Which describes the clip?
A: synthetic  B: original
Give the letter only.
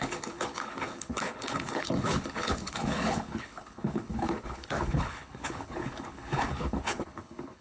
A